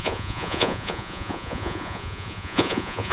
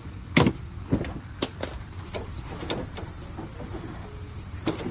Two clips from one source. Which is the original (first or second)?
second